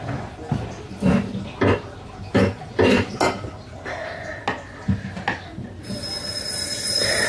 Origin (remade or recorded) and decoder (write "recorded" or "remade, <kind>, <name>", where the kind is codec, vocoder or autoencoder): recorded